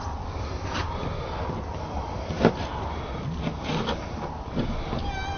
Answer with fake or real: real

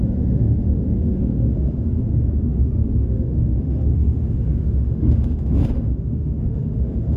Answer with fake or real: fake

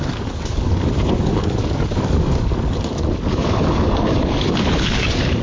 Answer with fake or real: fake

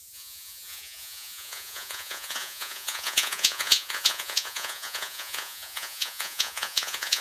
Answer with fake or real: fake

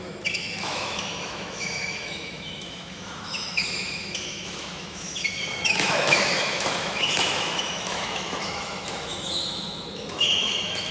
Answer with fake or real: fake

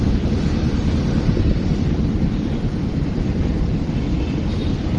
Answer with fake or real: fake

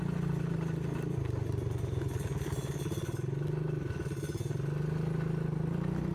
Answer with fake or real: real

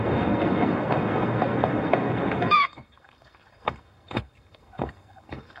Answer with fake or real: fake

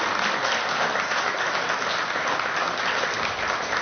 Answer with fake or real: real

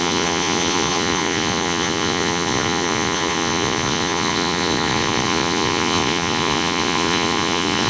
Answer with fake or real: fake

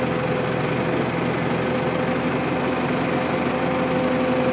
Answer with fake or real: real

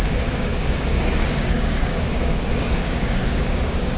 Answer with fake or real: fake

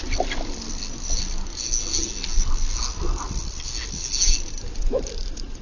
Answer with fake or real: real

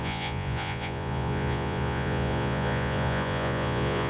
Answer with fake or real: fake